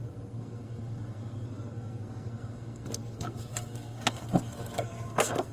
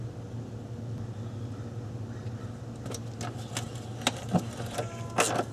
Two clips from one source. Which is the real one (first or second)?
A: second